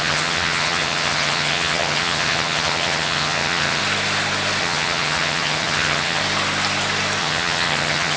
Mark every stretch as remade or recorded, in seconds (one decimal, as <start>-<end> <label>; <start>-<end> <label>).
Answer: 0.0-3.8 remade; 3.8-4.6 recorded; 4.6-6.2 remade; 6.2-7.2 recorded; 7.2-8.2 remade

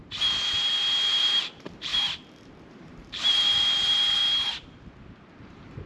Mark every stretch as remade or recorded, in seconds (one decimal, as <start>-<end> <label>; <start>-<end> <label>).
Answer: 0.0-1.2 recorded; 1.2-1.9 remade; 1.9-2.7 recorded; 2.7-4.2 remade; 4.2-5.4 recorded; 5.4-5.9 remade

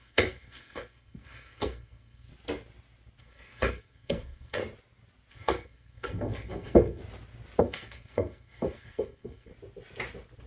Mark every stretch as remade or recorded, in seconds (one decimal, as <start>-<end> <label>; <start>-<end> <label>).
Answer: 0.0-2.3 remade; 2.3-3.2 recorded; 3.2-4.6 remade; 4.6-5.3 recorded; 5.3-7.0 remade; 7.0-7.6 recorded; 7.6-9.5 remade; 9.5-10.5 recorded

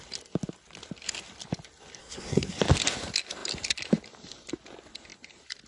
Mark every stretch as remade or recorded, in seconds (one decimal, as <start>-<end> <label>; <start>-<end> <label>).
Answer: 0.0-2.0 recorded; 2.0-2.6 remade; 2.6-5.7 recorded

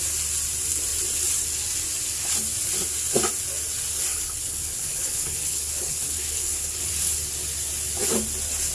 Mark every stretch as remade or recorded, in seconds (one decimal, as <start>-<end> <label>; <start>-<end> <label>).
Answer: 0.0-4.1 recorded; 4.1-6.8 remade; 6.8-8.7 recorded

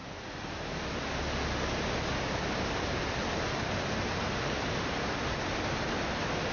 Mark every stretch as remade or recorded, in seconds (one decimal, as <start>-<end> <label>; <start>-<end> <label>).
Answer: 0.0-6.5 recorded

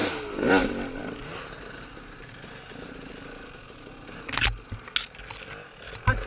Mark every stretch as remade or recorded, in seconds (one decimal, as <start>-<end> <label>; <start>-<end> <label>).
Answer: 0.0-6.3 recorded

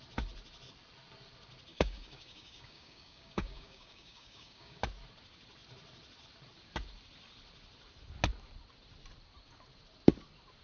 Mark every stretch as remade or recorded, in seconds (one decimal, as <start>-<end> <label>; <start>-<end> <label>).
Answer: 0.0-1.7 recorded; 1.7-4.8 remade; 4.8-10.6 recorded